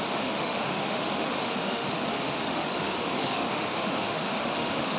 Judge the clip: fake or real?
fake